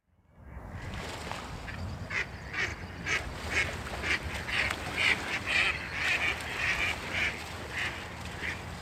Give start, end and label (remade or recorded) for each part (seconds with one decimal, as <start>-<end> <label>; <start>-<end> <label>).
0.0-8.8 recorded